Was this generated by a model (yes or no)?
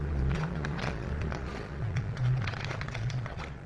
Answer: yes